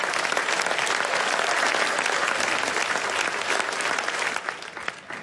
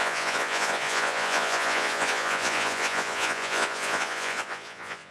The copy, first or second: second